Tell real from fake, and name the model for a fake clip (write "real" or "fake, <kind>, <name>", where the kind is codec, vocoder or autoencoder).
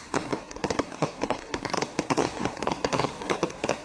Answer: fake, codec, SNAC